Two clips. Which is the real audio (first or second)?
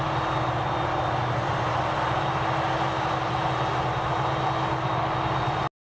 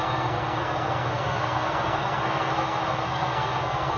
first